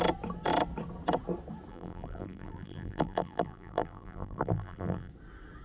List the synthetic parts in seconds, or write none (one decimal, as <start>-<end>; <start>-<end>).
1.7-5.1